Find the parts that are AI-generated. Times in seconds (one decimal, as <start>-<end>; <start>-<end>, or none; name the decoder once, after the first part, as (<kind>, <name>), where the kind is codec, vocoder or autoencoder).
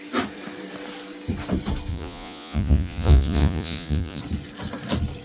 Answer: 1.9-4.2 (vocoder, Vocos)